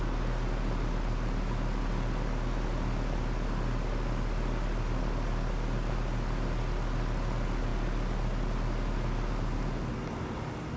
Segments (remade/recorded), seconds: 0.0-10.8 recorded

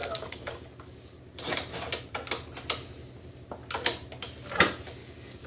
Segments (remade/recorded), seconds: 0.0-1.2 remade; 1.2-5.0 recorded; 5.0-5.5 remade

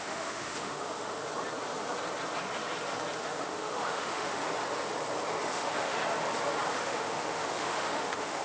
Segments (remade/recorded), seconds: 0.0-1.2 remade; 1.2-3.2 recorded; 3.2-4.4 remade; 4.4-5.5 recorded; 5.5-6.0 remade; 6.0-6.7 recorded; 6.7-8.4 remade